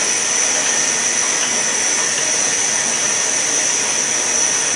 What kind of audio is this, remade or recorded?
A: recorded